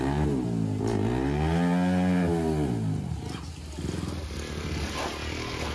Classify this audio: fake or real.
real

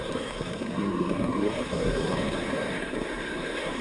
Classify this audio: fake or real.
fake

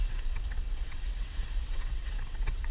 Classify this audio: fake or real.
fake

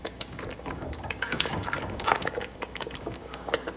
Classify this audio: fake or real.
fake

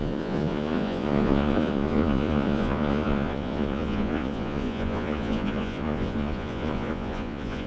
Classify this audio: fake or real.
fake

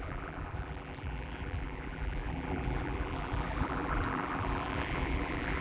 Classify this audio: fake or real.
fake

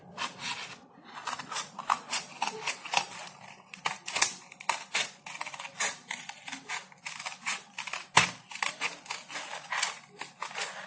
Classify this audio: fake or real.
real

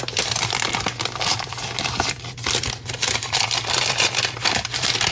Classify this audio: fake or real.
fake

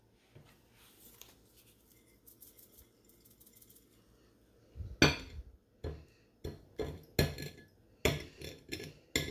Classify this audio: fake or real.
real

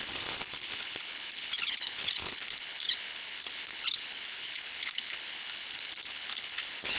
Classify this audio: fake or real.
fake